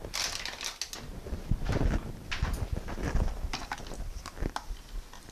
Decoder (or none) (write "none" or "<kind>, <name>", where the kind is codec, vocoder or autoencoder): none